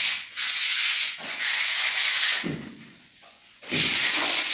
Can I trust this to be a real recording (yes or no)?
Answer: no